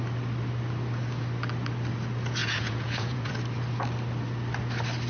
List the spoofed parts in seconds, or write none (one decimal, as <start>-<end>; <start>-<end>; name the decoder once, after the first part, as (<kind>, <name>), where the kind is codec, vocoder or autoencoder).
2.4-3.3 (vocoder, Vocos)